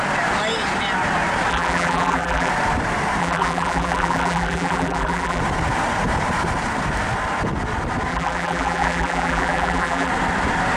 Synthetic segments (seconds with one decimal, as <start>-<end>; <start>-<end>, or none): 1.5-2.5; 3.2-5.4; 8.1-10.1

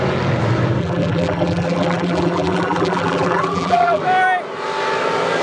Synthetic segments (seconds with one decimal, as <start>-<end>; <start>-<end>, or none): 0.8-4.0

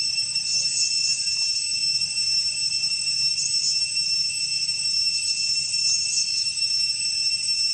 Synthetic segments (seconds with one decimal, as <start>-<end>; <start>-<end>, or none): none

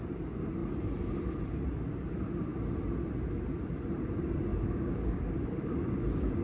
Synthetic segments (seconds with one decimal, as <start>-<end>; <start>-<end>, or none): 4.5-6.4

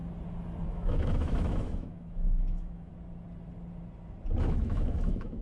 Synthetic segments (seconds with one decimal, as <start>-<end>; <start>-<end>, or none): 0.7-2.9; 4.4-5.4